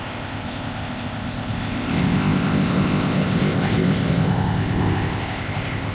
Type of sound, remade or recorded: remade